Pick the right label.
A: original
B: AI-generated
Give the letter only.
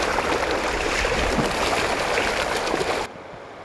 A